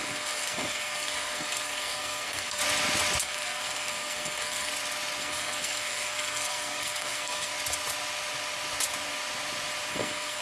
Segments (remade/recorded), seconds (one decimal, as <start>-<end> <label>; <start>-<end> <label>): 0.0-2.6 remade; 2.6-3.2 recorded; 3.2-4.7 remade; 4.7-5.2 recorded; 5.2-7.5 remade; 7.5-9.9 recorded; 9.9-10.4 remade